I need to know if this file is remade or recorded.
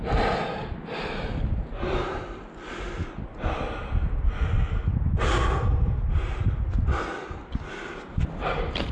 recorded